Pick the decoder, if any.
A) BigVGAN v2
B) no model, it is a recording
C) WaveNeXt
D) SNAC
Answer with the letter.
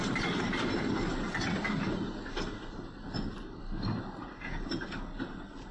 B